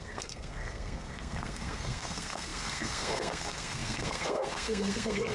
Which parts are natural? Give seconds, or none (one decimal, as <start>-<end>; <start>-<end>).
none